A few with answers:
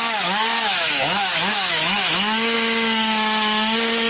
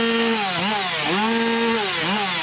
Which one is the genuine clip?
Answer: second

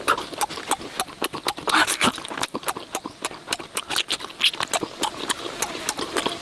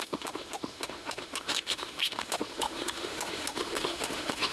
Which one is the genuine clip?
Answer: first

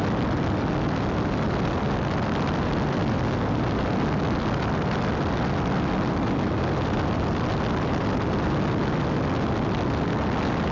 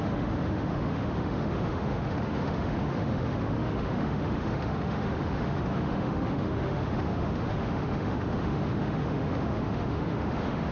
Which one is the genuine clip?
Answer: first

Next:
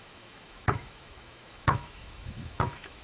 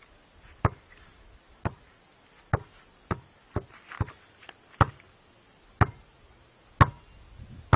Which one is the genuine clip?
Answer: second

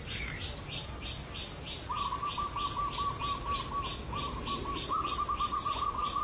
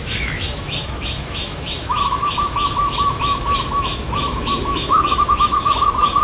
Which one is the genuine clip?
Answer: first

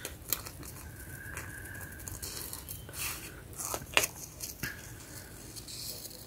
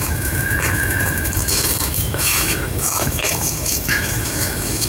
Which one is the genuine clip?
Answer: first